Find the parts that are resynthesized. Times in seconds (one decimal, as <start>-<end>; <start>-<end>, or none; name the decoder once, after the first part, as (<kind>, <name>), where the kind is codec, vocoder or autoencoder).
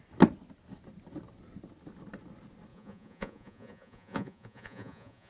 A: 2.7-5.3 (vocoder, Vocos)